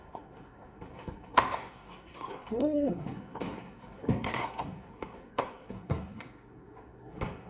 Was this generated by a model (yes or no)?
yes